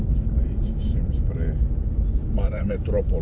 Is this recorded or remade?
remade